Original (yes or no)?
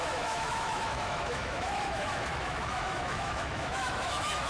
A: no